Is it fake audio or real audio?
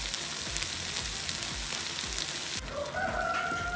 real